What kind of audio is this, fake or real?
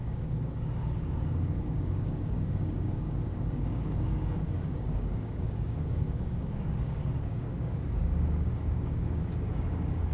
fake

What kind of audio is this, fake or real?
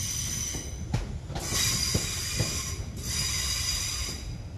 real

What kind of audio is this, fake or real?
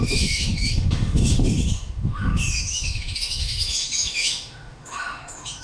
fake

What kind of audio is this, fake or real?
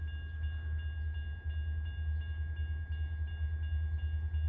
real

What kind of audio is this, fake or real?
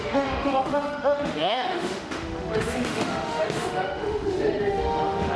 fake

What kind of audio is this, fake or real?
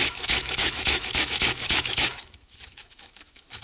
fake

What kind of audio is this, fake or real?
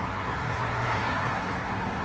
fake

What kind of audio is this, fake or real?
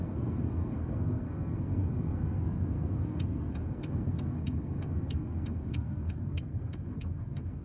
fake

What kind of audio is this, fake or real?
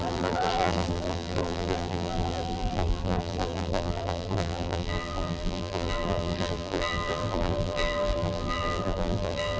fake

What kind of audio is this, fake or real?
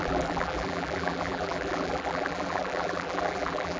fake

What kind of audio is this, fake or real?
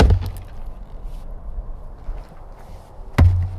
real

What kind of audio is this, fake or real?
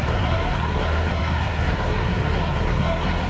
fake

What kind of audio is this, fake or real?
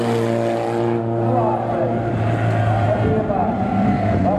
real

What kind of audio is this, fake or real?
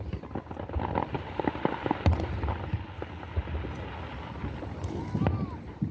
real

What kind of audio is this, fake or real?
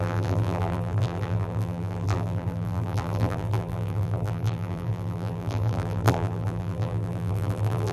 fake